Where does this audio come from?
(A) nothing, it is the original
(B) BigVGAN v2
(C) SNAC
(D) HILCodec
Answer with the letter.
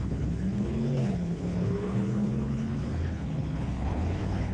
D